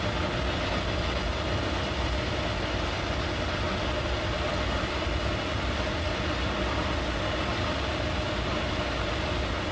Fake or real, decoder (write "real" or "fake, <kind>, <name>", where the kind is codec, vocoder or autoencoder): real